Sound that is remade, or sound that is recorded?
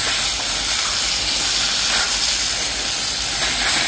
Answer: recorded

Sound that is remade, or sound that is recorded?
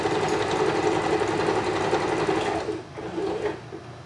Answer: recorded